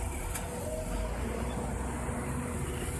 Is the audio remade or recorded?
recorded